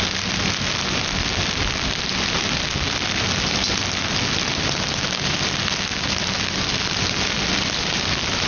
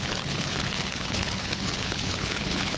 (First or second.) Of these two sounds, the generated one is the second